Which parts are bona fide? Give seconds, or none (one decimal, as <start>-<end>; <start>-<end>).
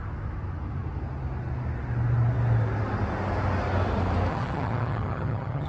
0.0-4.3